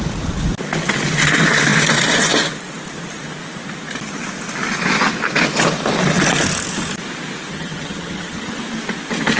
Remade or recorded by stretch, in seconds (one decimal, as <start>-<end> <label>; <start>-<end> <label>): 0.0-7.5 recorded; 7.5-8.5 remade; 8.5-9.4 recorded